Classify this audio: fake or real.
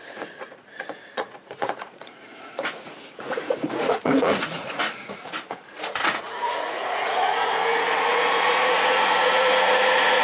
fake